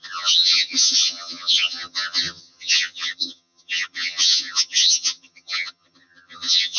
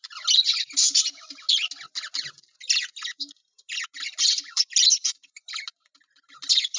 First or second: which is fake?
first